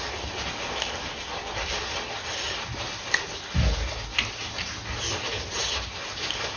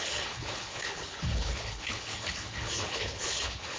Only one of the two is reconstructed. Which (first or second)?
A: second